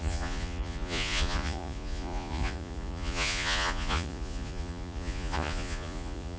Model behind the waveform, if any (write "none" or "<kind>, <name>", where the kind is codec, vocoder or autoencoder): vocoder, Vocos